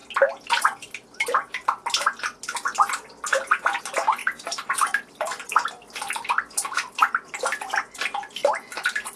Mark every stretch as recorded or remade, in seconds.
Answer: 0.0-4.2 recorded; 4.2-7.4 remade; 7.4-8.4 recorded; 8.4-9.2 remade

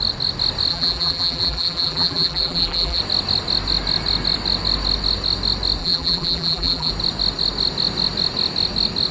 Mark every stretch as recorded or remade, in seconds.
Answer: 0.0-0.7 recorded; 0.7-3.0 remade; 3.0-5.8 recorded; 5.8-6.9 remade; 6.9-9.1 recorded